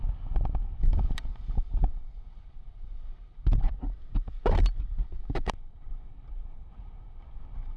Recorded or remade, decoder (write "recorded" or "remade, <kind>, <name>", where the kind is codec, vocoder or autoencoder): remade, vocoder, BigVGAN v2